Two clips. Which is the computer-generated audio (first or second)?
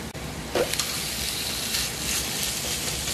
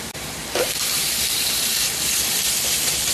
second